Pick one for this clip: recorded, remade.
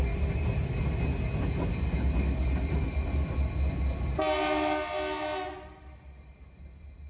recorded